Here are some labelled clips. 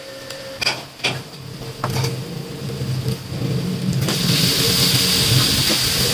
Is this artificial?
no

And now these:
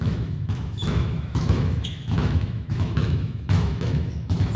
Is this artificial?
yes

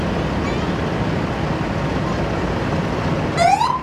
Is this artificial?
no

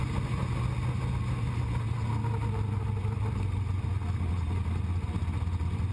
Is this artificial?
no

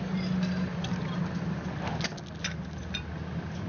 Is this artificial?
no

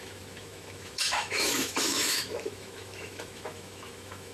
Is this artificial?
yes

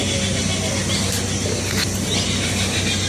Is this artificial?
no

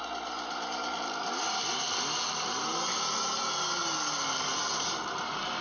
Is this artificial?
no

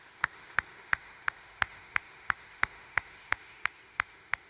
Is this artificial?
yes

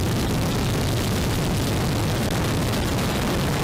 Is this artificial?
no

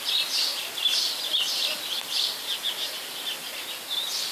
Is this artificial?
no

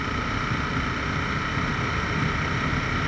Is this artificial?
no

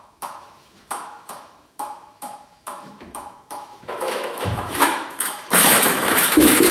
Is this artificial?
yes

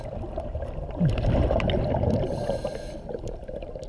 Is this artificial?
no